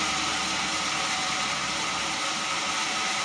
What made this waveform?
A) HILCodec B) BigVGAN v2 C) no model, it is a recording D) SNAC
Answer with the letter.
C